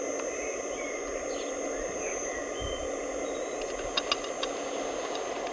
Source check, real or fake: real